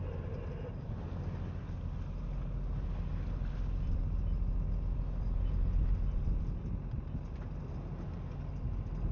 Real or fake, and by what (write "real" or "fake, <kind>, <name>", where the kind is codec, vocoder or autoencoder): real